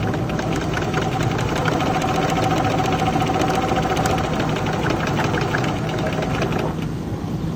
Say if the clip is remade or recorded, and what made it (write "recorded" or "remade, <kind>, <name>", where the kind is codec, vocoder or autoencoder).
recorded